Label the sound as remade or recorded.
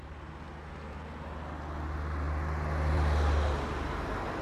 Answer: recorded